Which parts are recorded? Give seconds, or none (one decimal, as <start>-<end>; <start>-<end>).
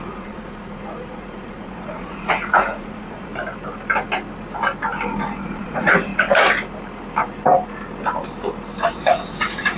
3.3-5.4; 6.1-8.8